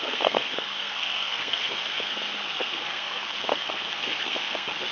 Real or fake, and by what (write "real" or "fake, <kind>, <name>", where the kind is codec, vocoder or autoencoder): fake, codec, SNAC